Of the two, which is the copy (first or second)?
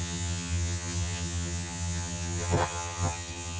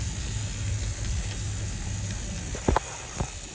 first